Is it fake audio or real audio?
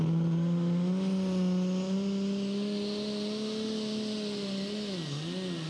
real